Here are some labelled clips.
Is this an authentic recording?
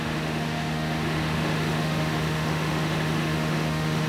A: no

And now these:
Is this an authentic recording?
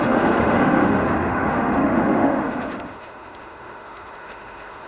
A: no